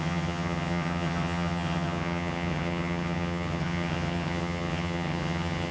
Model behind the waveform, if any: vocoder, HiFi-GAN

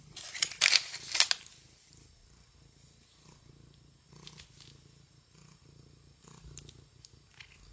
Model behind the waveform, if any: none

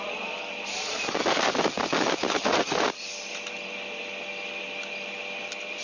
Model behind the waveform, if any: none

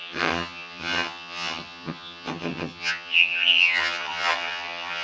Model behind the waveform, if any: vocoder, HiFi-GAN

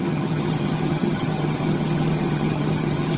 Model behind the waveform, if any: vocoder, HiFi-GAN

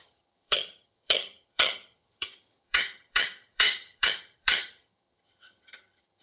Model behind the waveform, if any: vocoder, HiFi-GAN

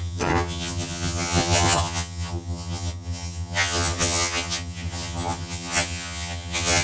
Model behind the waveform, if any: vocoder, HiFi-GAN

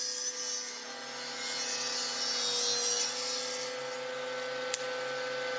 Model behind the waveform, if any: none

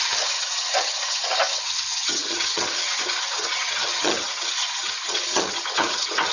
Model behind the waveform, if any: vocoder, HiFi-GAN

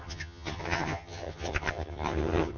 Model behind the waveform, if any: vocoder, HiFi-GAN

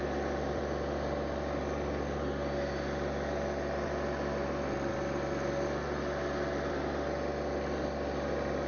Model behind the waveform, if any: none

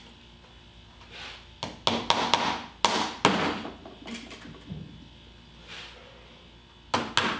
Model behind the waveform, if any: none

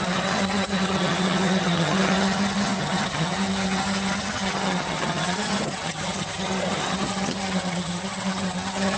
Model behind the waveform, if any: vocoder, HiFi-GAN